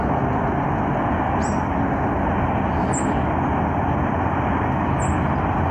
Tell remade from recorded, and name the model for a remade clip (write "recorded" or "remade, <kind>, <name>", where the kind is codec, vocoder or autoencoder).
recorded